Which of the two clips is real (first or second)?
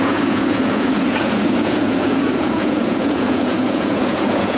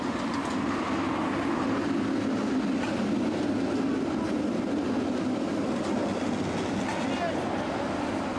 second